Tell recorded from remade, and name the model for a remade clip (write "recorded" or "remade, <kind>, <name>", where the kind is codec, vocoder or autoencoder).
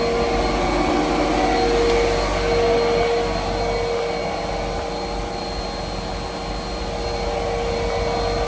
recorded